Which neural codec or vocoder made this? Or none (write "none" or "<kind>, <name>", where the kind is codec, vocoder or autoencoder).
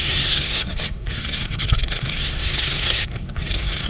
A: codec, SNAC